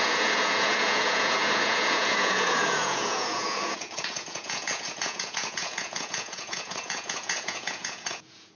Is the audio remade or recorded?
remade